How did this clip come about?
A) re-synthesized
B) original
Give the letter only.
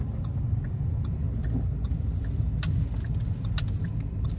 B